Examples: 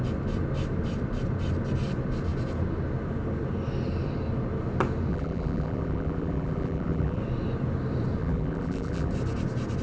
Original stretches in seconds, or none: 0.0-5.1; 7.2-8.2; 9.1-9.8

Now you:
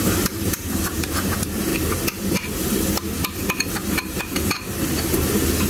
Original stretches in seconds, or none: 1.7-3.7; 4.3-5.7

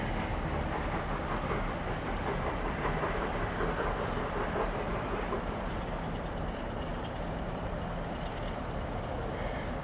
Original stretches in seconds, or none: 0.0-4.9; 5.7-6.9; 7.7-9.8

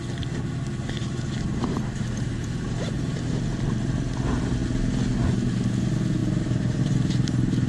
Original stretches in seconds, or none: 0.0-1.0; 3.3-6.2; 6.8-7.7

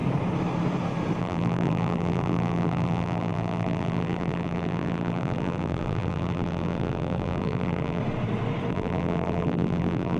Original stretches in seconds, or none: 0.0-1.2; 8.0-8.7

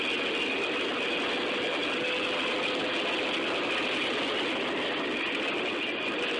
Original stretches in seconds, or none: 0.0-6.4